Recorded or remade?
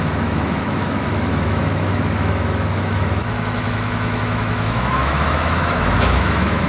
remade